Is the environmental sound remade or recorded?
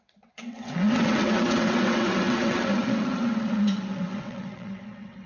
remade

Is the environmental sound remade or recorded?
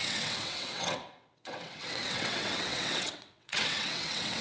remade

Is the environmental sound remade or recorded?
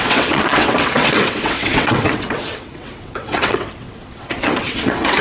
remade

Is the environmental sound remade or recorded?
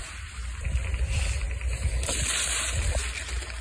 recorded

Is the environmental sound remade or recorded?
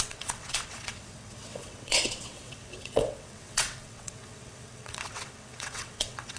remade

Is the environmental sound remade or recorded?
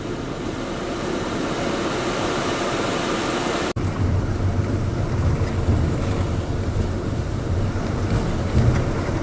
recorded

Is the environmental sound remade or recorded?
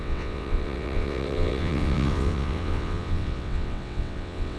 remade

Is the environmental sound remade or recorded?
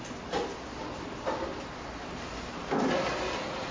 recorded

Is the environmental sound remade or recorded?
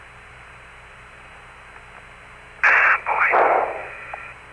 recorded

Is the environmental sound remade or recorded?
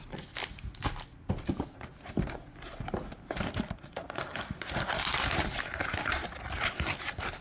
recorded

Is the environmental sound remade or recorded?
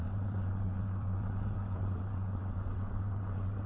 remade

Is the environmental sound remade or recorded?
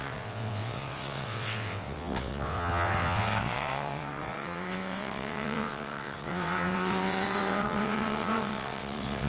remade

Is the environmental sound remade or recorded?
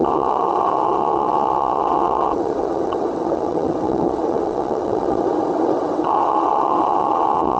remade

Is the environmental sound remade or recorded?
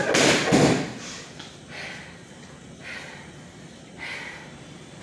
recorded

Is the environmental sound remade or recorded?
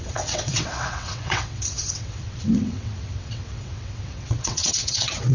remade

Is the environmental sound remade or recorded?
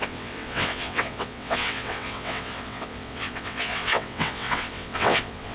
remade